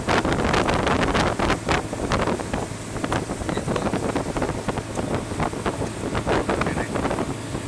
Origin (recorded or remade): recorded